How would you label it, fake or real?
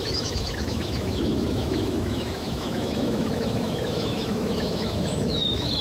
fake